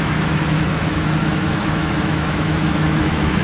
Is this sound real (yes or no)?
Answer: no